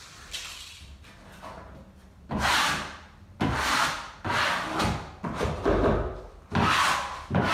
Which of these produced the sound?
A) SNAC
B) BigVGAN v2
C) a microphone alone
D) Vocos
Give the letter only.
C